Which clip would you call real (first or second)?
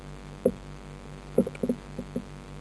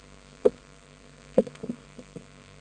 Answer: first